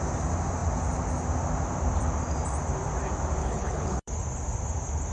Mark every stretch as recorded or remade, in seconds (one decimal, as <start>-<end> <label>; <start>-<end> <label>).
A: 0.0-3.4 recorded; 3.4-4.1 remade; 4.1-5.1 recorded